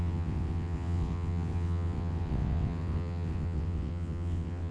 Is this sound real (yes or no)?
no